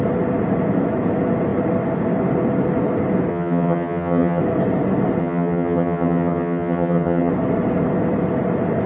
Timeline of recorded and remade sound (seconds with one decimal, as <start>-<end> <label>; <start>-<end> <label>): 0.0-3.3 recorded; 3.3-4.4 remade; 4.4-5.2 recorded; 5.2-7.3 remade; 7.3-8.9 recorded

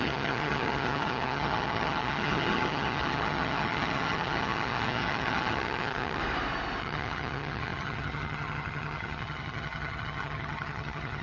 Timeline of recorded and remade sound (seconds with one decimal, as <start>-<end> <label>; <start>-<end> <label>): 0.0-6.2 remade; 6.2-6.8 recorded; 6.8-11.2 remade